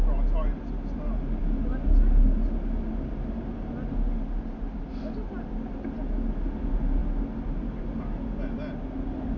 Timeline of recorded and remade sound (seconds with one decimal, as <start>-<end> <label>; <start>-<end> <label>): 0.0-9.4 recorded